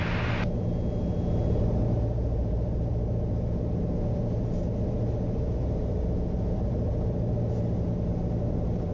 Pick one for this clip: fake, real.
real